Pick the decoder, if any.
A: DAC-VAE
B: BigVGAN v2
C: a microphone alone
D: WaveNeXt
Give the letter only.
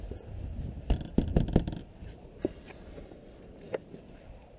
C